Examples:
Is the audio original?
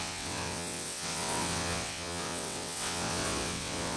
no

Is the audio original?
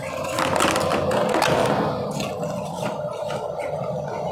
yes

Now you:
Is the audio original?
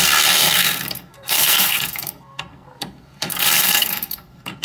no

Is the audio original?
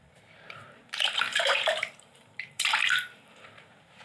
no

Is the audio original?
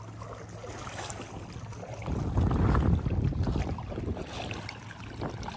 yes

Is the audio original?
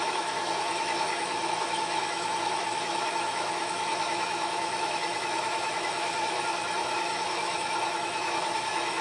no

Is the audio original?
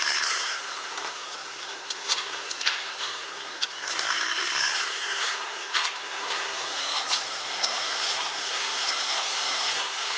no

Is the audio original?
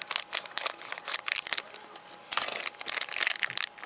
yes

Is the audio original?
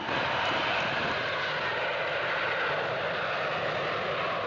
yes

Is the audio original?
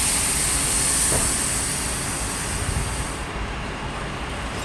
yes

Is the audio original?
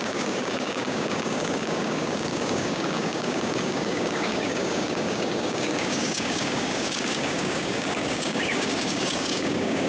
no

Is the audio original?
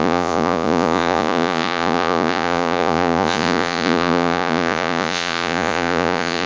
no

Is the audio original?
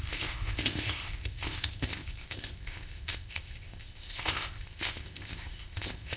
no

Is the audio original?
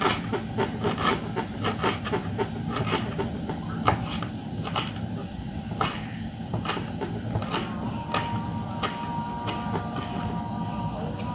yes